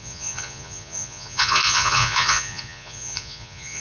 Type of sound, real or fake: fake